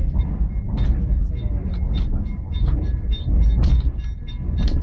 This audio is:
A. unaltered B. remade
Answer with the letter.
A